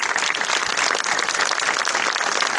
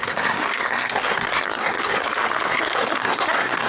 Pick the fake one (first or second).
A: second